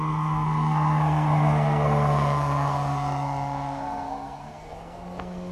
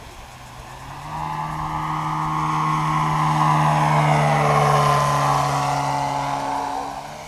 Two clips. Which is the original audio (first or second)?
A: second